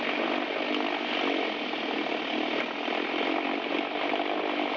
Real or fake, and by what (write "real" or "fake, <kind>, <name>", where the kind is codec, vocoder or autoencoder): real